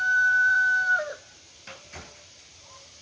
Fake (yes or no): yes